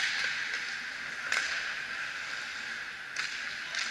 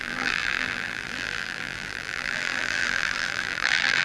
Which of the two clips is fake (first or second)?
second